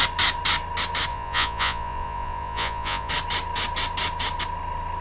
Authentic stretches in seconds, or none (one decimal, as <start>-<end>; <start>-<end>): 0.0-1.1; 3.1-5.0

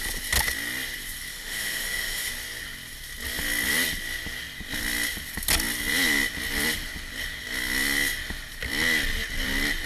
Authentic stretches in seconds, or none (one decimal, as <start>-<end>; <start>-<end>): 0.0-1.3; 2.3-9.9

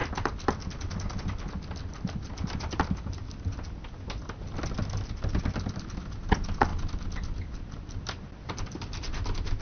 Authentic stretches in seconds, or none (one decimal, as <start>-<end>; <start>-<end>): 0.0-9.6

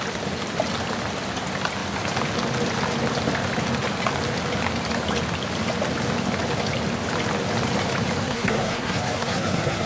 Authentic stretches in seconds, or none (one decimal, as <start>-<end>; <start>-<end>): 0.0-8.2

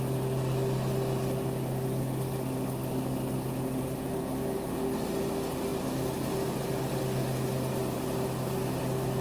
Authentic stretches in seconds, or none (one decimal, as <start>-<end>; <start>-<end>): 0.0-9.2